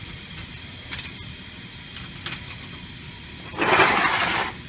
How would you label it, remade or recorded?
remade